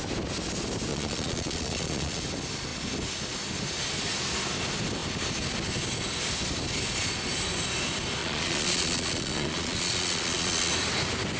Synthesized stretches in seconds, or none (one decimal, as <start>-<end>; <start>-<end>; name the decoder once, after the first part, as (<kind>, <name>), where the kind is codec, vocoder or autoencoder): 0.9-2.2 (vocoder, Vocos); 8.2-10.7